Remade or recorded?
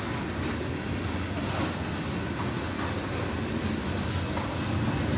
recorded